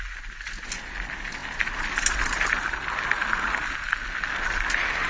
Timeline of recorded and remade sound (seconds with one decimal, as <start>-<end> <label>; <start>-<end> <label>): 0.0-5.1 recorded